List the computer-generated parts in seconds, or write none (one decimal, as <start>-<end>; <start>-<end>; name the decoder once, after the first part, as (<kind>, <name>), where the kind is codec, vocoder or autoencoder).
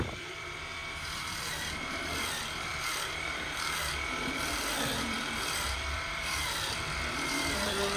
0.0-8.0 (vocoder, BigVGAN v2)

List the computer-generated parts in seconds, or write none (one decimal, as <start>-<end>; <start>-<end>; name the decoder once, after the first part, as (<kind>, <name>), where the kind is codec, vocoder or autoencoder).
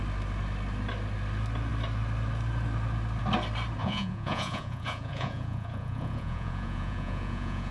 3.8-7.7 (vocoder, Vocos)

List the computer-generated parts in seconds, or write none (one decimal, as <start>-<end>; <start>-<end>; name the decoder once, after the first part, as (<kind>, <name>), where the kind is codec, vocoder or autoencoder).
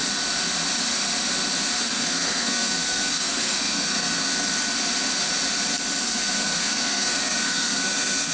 1.8-4.3 (codec, SNAC); 6.0-8.3